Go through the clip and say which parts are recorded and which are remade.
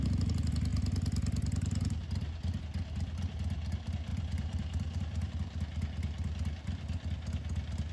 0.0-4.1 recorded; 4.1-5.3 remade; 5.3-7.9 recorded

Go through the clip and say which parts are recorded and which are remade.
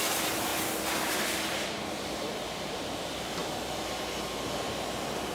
0.0-0.5 remade; 0.5-1.1 recorded; 1.1-3.4 remade; 3.4-5.3 recorded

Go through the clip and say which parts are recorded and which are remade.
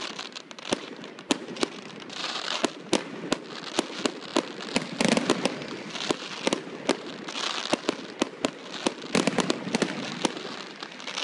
0.0-2.6 remade; 2.6-11.2 recorded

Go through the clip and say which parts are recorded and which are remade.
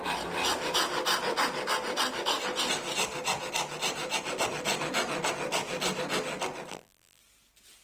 0.0-6.7 recorded; 6.7-7.2 remade; 7.2-7.8 recorded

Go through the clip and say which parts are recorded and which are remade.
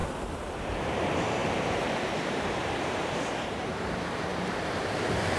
0.0-5.4 remade